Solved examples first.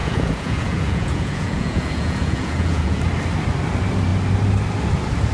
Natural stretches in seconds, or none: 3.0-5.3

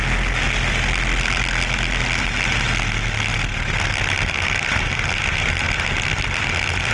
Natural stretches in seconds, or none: 0.0-6.9